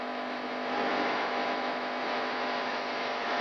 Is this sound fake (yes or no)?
yes